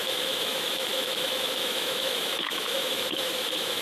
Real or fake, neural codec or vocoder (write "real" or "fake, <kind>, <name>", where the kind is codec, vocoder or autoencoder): fake, autoencoder, DAC-VAE